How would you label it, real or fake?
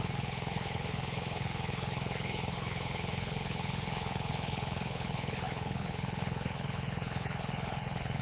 fake